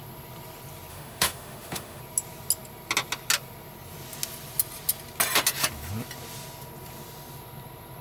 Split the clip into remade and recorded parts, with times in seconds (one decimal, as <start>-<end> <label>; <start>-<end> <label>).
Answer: 0.0-0.9 recorded; 0.9-2.0 remade; 2.0-8.0 recorded